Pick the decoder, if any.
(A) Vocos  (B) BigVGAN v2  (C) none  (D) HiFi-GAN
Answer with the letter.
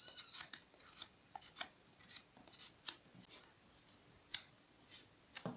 C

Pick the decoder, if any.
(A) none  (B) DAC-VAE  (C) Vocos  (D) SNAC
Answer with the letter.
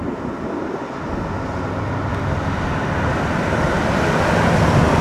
A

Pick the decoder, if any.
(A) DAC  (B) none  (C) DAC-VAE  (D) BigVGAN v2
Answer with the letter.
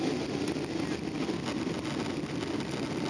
B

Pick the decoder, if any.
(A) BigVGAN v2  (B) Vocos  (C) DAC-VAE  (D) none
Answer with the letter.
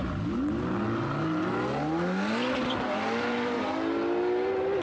D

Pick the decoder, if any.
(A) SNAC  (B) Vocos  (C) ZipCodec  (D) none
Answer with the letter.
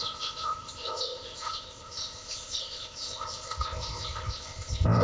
C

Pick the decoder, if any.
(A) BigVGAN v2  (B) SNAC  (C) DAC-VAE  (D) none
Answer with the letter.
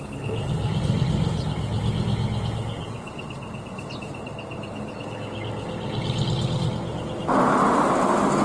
D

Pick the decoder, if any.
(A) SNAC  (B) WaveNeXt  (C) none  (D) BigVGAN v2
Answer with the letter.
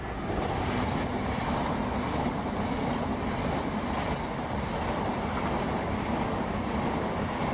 C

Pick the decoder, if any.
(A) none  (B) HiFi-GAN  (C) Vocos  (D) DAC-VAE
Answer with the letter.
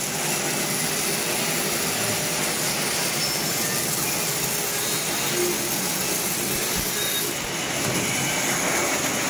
A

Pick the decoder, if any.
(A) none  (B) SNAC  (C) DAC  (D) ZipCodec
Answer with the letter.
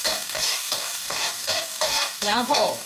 C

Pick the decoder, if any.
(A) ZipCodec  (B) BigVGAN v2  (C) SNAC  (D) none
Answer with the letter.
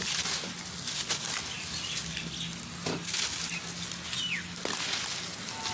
D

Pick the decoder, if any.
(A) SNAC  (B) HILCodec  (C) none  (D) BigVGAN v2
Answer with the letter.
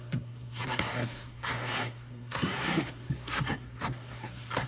A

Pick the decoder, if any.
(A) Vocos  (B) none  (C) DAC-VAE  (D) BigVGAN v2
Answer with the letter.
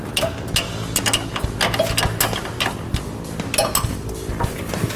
B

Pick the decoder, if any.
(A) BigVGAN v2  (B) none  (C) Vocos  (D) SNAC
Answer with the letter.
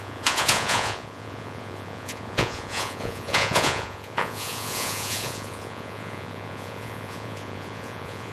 C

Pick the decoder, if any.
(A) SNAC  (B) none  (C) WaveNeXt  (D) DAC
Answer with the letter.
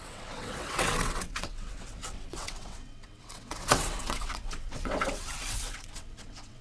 C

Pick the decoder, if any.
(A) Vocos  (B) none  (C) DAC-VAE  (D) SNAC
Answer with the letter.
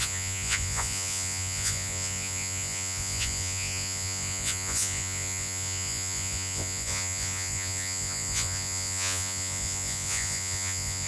A